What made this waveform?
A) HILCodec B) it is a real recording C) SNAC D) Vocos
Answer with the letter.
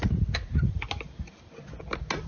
B